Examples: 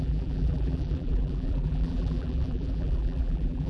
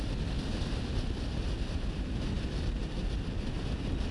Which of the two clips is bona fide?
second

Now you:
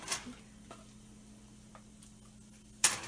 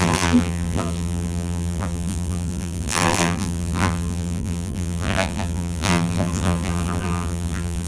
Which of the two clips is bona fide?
first